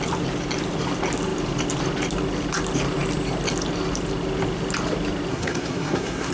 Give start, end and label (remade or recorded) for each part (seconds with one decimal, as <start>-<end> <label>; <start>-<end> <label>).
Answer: 0.0-5.3 recorded; 5.3-6.3 remade